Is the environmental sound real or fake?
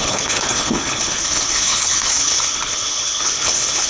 fake